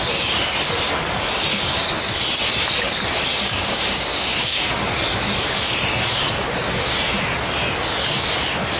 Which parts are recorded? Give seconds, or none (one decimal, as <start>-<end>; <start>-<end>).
0.0-3.3; 4.7-8.8